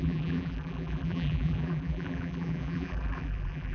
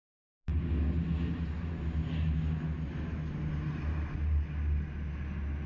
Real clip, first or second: second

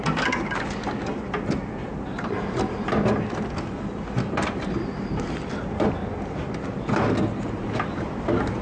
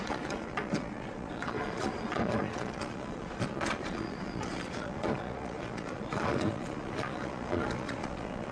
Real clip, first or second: first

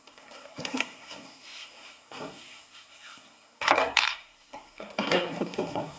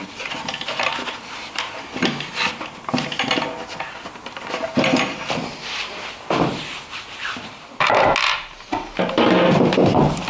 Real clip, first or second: second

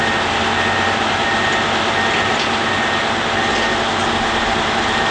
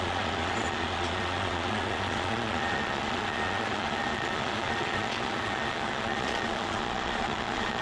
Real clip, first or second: first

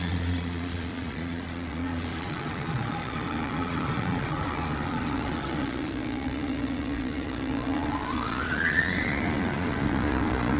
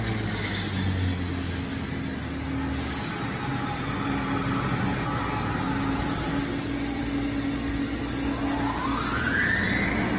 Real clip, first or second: second